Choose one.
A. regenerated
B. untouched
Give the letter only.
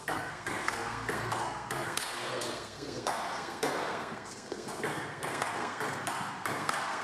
A